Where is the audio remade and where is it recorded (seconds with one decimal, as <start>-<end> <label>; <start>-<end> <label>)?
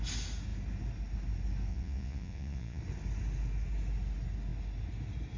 0.0-1.7 recorded; 1.7-2.8 remade; 2.8-5.4 recorded